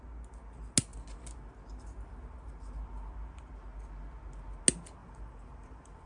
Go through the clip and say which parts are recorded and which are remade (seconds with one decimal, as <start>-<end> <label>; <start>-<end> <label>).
0.0-5.0 recorded; 5.0-6.1 remade